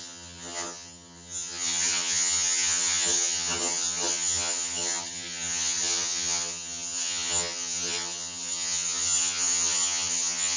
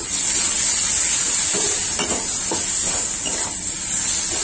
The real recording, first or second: second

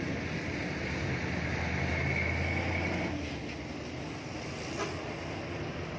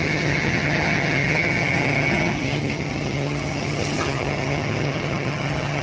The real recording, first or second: first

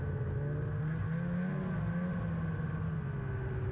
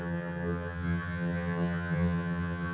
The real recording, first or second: first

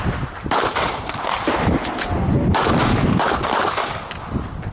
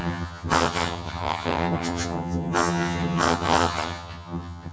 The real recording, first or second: first